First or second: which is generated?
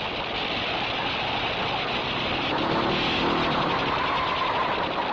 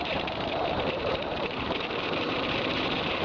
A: second